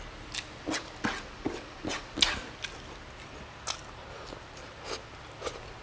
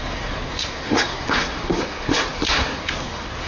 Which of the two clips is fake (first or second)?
second